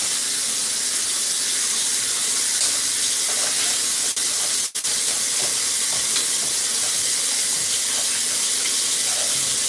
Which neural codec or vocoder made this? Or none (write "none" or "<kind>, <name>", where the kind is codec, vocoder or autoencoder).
none